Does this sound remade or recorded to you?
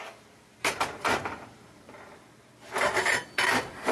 recorded